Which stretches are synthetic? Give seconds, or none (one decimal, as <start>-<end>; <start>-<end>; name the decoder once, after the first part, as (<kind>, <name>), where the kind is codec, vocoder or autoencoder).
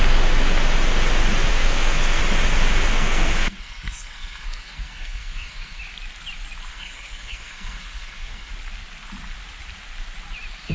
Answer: 1.5-2.2 (codec, SNAC); 2.9-5.8; 6.7-8.5